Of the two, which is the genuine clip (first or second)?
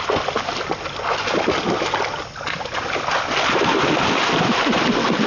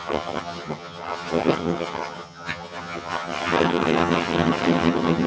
first